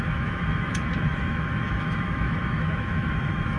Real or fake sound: fake